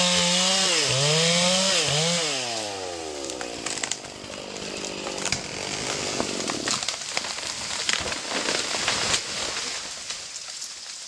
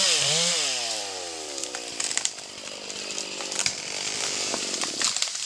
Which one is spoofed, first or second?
second